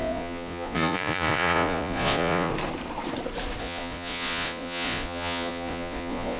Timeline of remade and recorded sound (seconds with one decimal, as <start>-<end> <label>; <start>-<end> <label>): 0.0-2.5 remade; 2.5-3.6 recorded; 3.6-6.4 remade